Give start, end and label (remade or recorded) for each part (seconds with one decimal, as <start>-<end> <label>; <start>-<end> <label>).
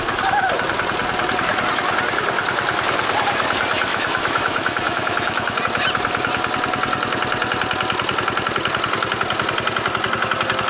0.0-3.9 recorded; 3.9-5.6 remade; 5.6-10.7 recorded